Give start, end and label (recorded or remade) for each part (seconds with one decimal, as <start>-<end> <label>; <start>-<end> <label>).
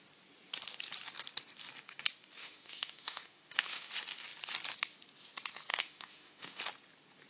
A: 0.0-2.4 recorded; 2.4-3.9 remade; 3.9-5.7 recorded; 5.7-6.6 remade; 6.6-7.3 recorded